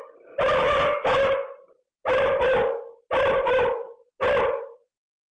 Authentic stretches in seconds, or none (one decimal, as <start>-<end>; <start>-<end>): 0.0-5.3